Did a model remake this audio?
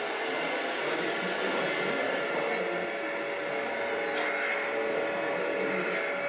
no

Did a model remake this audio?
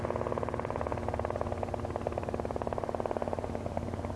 no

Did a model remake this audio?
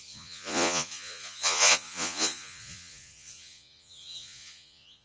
yes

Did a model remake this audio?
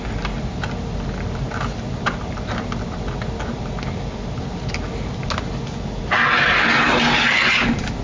no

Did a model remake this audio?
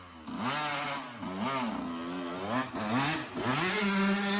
no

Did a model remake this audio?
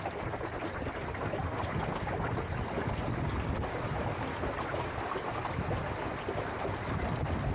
no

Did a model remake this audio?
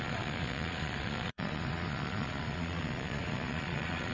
yes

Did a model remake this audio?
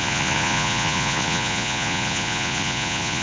yes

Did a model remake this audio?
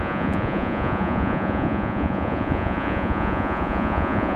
yes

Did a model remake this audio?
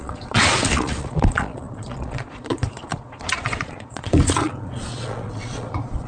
yes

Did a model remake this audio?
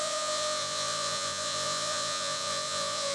yes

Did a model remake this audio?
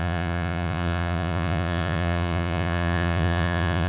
yes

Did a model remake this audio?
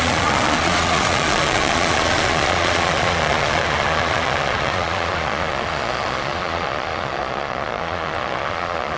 yes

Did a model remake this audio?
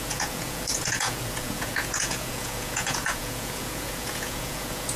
yes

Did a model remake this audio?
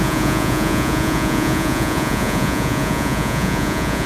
yes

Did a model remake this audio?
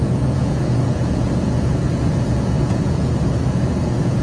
yes